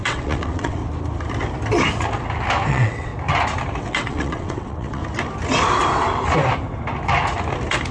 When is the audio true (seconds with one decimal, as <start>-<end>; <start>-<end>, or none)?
0.8-2.7; 3.1-3.8; 5.0-7.9